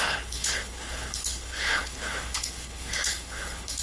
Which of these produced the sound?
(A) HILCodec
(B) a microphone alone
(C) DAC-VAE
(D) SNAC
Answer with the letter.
A